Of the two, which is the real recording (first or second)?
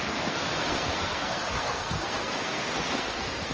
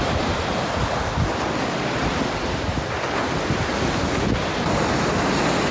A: second